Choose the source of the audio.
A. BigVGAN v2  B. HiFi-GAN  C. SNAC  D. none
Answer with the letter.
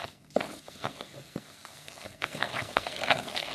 C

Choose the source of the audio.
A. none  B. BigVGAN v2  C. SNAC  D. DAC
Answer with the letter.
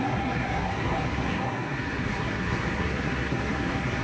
C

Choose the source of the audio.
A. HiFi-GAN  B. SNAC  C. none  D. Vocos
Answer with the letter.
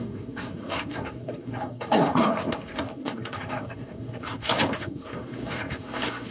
B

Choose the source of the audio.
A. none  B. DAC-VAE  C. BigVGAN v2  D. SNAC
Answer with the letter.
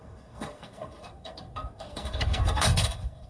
D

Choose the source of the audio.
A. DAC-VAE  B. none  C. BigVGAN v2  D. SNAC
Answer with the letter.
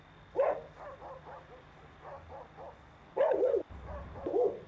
B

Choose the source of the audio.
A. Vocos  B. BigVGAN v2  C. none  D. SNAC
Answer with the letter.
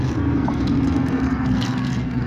D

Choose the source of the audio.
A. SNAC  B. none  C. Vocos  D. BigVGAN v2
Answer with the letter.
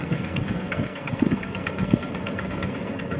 A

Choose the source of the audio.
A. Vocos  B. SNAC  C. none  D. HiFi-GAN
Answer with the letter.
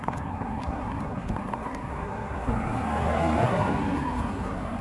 B